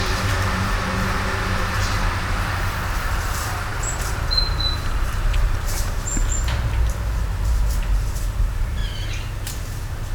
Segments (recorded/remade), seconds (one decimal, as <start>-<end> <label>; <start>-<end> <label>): 0.0-6.2 remade; 6.2-7.2 recorded; 7.2-8.8 remade; 8.8-10.1 recorded